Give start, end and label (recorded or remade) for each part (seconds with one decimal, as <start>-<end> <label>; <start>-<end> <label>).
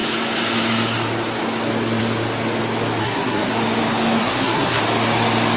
0.0-3.0 recorded; 3.0-3.5 remade; 3.5-4.2 recorded; 4.2-4.8 remade; 4.8-5.6 recorded